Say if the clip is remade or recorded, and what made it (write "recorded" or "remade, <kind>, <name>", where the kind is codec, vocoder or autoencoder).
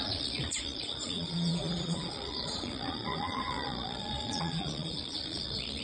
remade, vocoder, Vocos